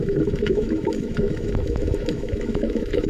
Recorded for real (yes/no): no